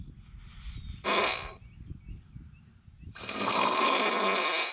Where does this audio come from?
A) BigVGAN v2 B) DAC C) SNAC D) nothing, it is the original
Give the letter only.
D